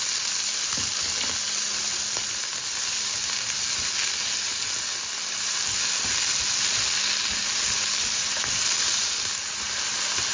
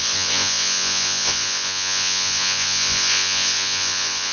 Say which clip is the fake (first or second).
second